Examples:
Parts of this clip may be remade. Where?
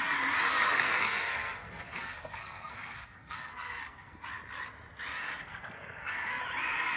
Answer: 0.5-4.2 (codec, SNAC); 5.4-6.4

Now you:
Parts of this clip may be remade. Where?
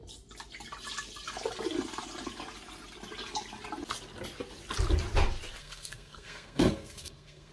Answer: 5.6-7.5 (codec, SNAC)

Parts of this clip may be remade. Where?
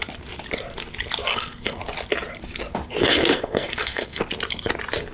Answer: 1.3-1.8 (codec, SNAC); 3.0-4.2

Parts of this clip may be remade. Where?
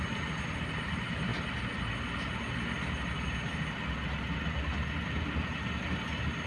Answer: none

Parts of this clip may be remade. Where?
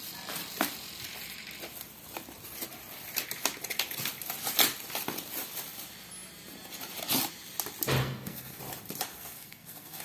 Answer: 8.0-8.6 (codec, SNAC); 9.1-10.0